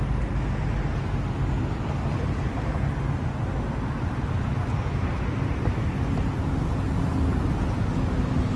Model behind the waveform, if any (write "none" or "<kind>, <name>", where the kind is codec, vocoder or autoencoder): none